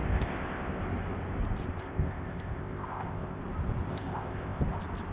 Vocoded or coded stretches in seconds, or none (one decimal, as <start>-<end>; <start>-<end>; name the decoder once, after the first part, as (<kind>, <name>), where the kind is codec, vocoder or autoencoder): 0.0-0.8 (codec, ZipCodec); 1.8-3.4; 3.9-4.6